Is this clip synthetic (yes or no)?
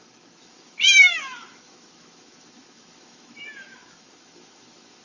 yes